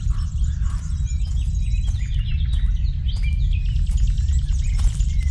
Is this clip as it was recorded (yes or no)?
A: yes